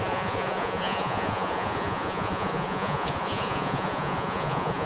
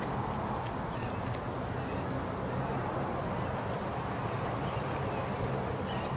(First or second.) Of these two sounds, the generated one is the first